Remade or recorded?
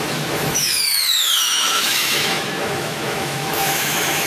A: remade